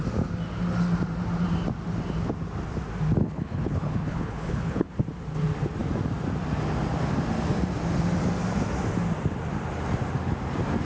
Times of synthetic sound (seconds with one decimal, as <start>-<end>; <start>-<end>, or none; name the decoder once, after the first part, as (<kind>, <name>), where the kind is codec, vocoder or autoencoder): 3.2-4.9 (codec, HILCodec)